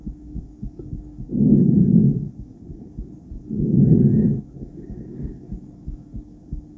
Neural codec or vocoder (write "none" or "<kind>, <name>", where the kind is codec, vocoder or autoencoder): codec, DAC